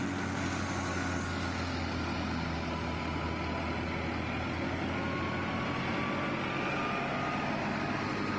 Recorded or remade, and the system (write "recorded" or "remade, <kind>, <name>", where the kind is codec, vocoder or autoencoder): recorded